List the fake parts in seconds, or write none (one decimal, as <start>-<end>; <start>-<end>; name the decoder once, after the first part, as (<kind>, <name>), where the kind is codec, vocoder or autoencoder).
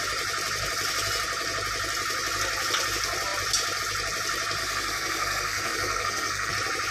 4.6-6.5 (codec, SNAC)